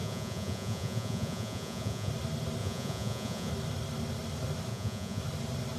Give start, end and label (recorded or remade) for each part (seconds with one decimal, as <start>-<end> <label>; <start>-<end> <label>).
0.0-2.1 remade; 2.1-2.6 recorded; 2.6-3.5 remade; 3.5-4.7 recorded; 4.7-5.2 remade; 5.2-5.8 recorded